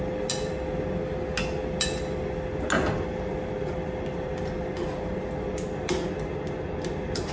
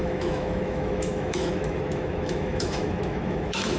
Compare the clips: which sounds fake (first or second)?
second